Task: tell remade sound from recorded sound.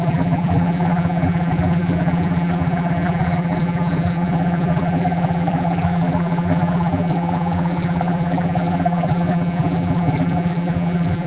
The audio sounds remade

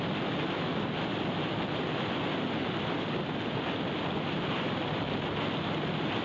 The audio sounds recorded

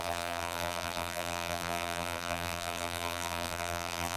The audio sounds remade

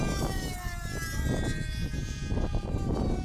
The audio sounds remade